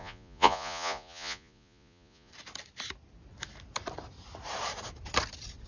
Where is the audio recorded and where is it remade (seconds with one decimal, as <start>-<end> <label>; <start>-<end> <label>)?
0.0-2.3 remade; 2.3-5.7 recorded